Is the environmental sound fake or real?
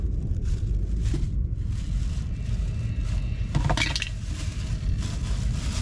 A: real